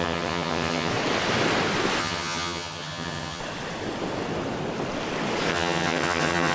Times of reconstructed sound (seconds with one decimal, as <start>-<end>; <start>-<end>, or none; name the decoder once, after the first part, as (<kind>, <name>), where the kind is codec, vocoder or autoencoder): 0.0-0.9 (vocoder, HiFi-GAN); 2.0-3.4; 5.5-6.5